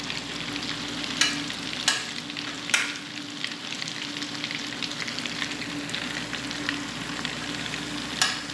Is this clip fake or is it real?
real